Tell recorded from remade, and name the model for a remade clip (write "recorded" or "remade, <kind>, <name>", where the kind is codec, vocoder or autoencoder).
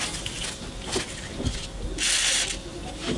recorded